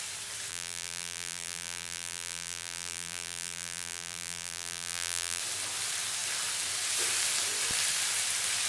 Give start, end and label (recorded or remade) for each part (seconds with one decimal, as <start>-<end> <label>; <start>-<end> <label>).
0.0-0.5 recorded; 0.5-5.4 remade; 5.4-8.7 recorded